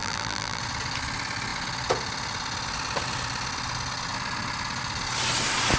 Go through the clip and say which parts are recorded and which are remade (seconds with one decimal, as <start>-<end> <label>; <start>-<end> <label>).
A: 0.0-0.6 remade; 0.6-5.8 recorded